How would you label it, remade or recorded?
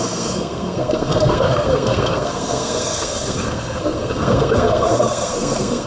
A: remade